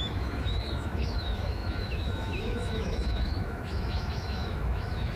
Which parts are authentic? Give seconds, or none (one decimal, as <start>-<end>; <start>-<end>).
none